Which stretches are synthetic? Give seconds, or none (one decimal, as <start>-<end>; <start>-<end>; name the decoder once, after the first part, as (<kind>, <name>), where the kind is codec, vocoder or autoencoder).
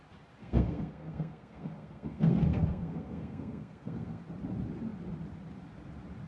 0.4-4.2 (codec, SNAC)